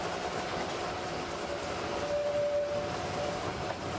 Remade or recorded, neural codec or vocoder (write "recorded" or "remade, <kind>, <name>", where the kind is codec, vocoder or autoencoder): recorded